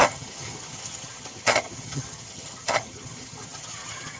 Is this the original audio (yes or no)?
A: no